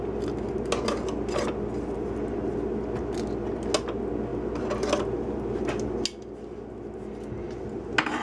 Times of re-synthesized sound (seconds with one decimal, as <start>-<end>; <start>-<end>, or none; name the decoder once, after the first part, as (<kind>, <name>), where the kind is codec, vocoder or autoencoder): none